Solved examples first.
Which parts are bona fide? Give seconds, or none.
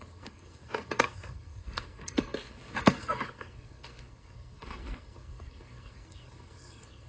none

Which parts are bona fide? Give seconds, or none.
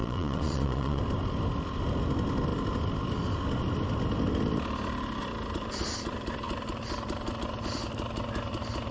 1.0-8.9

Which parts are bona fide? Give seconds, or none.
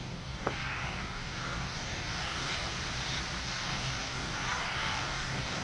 2.7-3.4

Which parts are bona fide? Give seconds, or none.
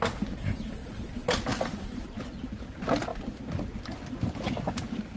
0.0-5.2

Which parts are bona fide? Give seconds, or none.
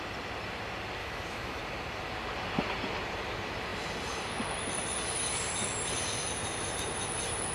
0.0-1.0; 1.6-7.5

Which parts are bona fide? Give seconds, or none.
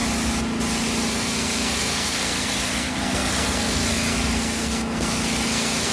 0.0-1.1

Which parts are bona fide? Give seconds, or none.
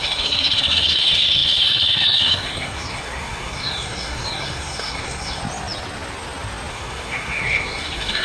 5.4-6.7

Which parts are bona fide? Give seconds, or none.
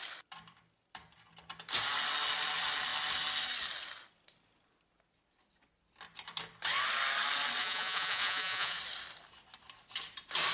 0.0-7.6; 8.8-10.5